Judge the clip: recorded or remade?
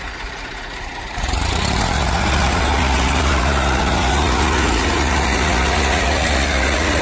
remade